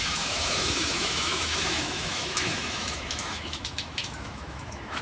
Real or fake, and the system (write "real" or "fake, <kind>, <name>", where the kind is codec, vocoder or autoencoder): fake, autoencoder, DAC-VAE